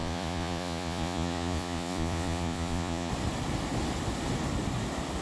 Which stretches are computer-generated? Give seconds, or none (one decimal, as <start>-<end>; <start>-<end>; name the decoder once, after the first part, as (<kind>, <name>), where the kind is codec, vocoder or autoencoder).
0.0-3.1 (vocoder, Vocos)